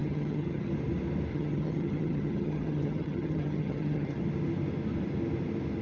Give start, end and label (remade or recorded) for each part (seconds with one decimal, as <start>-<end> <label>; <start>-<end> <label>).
0.0-0.7 remade; 0.7-1.3 recorded; 1.3-4.2 remade; 4.2-5.8 recorded

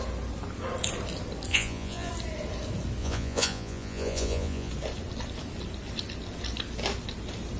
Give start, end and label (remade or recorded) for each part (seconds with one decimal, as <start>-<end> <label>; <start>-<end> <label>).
0.0-1.5 recorded; 1.5-2.1 remade; 2.1-3.0 recorded; 3.0-4.7 remade; 4.7-7.6 recorded

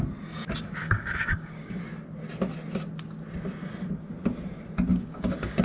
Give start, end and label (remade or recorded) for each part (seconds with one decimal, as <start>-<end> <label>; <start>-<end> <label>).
0.0-0.8 recorded; 0.8-1.8 remade; 1.8-4.9 recorded; 4.9-5.6 remade

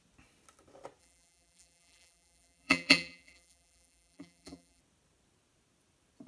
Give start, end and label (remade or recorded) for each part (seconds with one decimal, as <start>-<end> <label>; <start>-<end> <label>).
0.0-1.0 recorded; 1.0-4.8 remade; 4.8-6.3 recorded